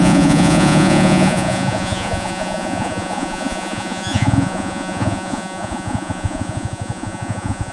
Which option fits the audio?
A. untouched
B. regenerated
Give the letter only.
B